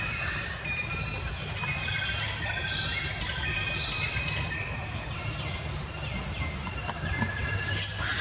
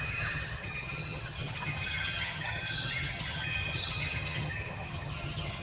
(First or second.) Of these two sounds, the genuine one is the first